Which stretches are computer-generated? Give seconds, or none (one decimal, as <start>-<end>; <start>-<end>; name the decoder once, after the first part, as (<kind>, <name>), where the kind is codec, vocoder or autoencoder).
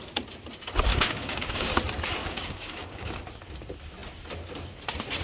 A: 0.9-1.7 (codec, DAC); 2.2-3.1